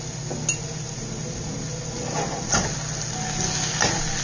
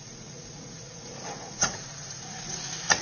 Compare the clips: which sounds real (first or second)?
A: first